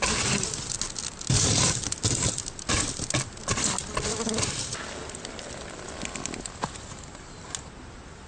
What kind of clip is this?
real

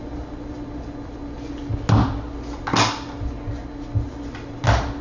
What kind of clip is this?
real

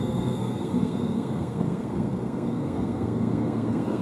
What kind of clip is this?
fake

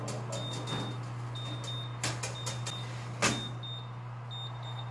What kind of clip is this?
real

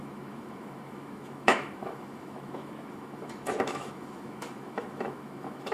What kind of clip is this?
fake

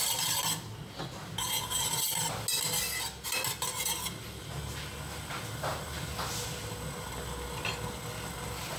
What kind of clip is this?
real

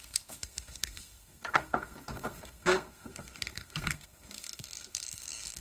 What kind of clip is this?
fake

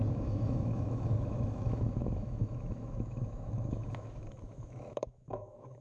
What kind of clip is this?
fake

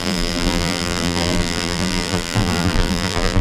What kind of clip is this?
fake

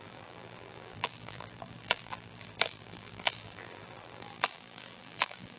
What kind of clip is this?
fake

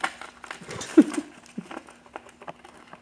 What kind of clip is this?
real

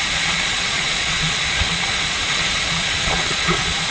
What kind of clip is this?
fake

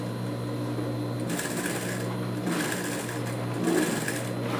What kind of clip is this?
real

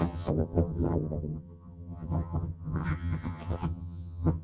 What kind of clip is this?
fake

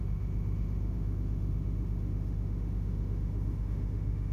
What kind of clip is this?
fake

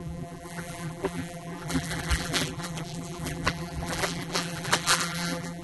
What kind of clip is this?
fake